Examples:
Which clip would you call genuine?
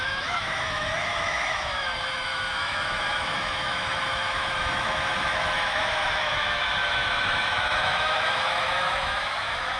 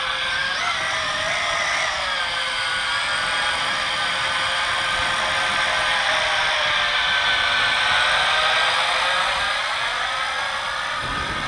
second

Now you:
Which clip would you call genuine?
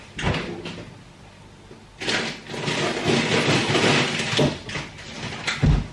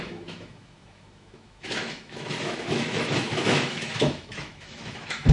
first